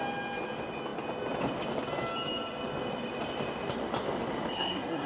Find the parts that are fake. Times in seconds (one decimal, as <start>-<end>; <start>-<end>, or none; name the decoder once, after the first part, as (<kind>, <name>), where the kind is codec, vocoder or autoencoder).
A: 4.5-5.1 (codec, SNAC)